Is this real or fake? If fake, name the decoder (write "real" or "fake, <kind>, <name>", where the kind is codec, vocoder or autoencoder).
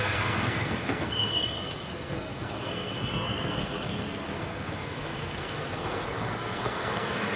fake, codec, SNAC